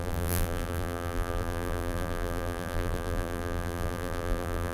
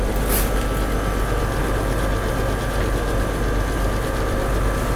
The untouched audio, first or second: second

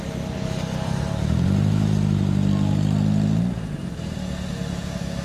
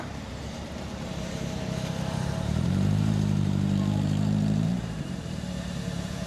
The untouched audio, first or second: first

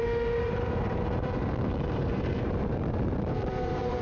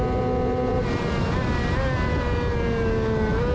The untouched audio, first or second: second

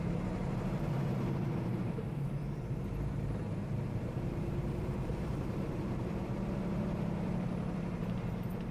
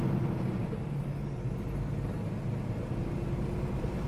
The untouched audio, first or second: second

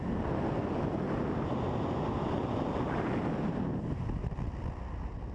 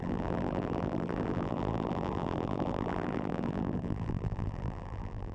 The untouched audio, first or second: first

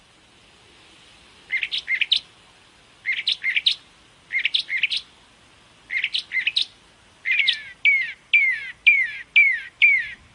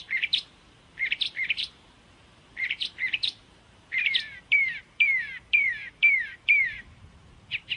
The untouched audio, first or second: first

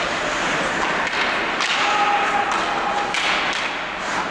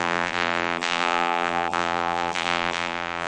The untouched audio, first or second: first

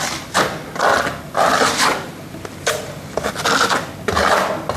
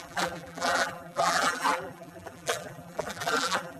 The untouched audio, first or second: first